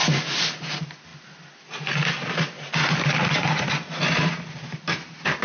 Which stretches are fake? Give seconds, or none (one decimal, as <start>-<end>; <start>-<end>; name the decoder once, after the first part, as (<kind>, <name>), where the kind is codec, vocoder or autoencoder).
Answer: none